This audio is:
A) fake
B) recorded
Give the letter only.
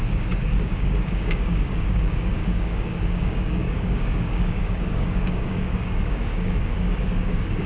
A